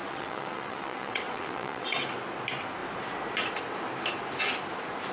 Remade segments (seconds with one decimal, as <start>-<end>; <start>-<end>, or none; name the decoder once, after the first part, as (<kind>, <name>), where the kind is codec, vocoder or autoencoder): 0.0-2.0 (vocoder, WaveNeXt)